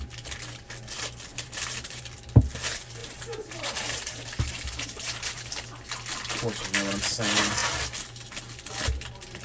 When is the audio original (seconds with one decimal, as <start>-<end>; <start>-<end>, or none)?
0.0-1.3; 2.0-3.0; 5.5-9.4